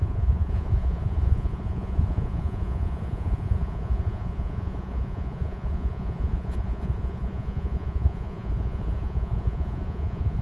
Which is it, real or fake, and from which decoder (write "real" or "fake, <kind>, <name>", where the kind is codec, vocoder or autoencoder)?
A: fake, vocoder, Vocos